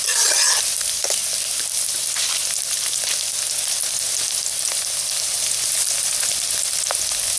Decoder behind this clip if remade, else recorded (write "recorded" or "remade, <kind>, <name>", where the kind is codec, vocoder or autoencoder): recorded